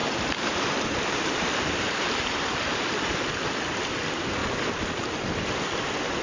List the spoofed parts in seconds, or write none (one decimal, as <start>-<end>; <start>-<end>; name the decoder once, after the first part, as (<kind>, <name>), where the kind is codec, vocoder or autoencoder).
0.0-3.3 (vocoder, BigVGAN v2)